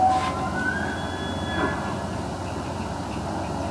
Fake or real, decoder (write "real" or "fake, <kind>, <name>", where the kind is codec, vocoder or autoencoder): real